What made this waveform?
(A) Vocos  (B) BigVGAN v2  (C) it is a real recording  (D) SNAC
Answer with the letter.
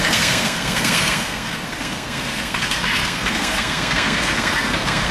D